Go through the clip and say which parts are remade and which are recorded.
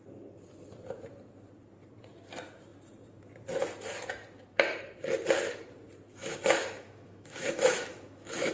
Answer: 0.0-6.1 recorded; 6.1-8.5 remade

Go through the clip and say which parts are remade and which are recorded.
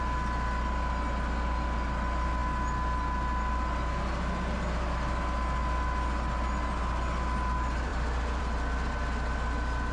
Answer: 0.0-9.9 recorded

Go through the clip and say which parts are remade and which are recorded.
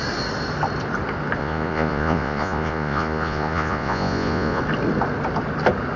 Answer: 0.0-1.4 recorded; 1.4-4.6 remade; 4.6-6.0 recorded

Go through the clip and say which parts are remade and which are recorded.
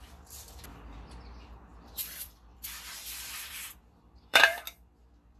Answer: 0.0-1.7 recorded; 1.7-4.4 remade; 4.4-5.4 recorded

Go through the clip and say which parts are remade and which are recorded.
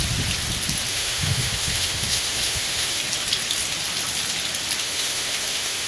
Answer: 0.0-0.9 recorded; 0.9-3.0 remade; 3.0-4.8 recorded; 4.8-5.9 remade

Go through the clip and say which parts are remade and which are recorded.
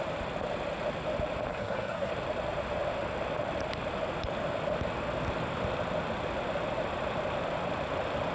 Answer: 0.0-1.5 recorded; 1.5-2.1 remade; 2.1-8.3 recorded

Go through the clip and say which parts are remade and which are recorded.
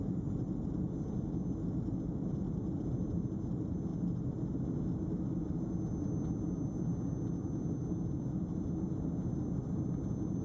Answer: 0.0-10.4 recorded